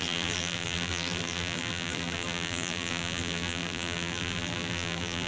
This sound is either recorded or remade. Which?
remade